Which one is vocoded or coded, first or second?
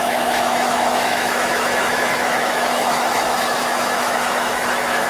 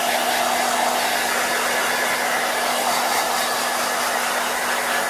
first